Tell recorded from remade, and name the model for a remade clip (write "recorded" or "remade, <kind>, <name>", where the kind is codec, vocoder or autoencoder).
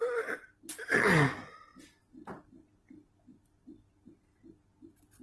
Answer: recorded